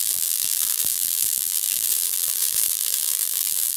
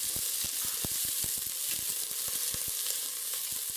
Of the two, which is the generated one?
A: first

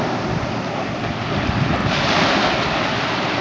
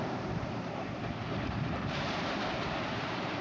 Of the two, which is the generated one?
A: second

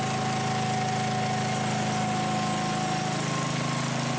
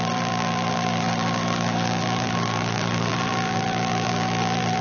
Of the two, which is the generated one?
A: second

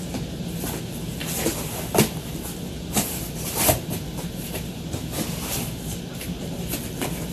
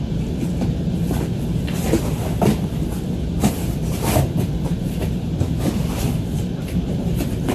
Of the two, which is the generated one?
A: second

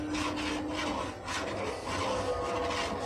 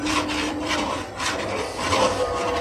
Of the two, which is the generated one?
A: second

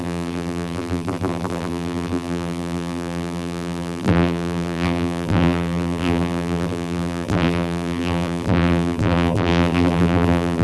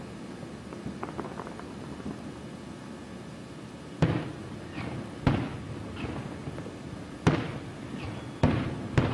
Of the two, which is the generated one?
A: first